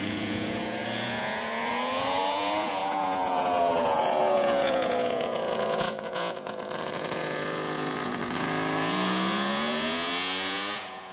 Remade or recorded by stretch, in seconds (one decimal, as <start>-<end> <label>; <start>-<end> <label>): 0.0-11.1 remade